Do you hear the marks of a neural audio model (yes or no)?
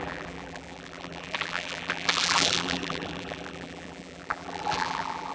yes